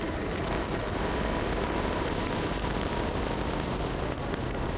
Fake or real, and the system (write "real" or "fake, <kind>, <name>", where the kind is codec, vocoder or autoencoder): real